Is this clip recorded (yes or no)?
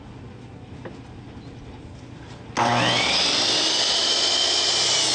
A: yes